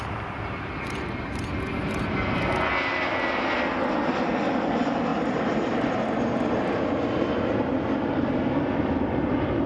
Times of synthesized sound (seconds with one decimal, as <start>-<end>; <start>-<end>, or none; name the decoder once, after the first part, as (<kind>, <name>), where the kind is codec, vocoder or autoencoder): none